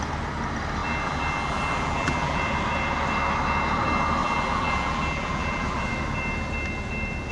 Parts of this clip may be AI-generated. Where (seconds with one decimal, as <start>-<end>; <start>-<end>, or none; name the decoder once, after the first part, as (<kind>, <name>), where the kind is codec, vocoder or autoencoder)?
0.8-2.4 (vocoder, BigVGAN v2); 4.2-5.9